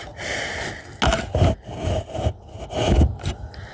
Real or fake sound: real